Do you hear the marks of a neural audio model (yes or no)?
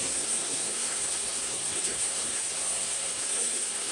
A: yes